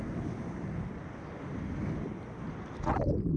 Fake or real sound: real